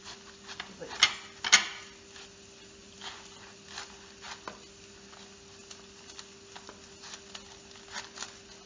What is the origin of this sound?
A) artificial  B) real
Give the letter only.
B